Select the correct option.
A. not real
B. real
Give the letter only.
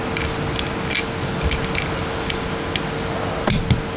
B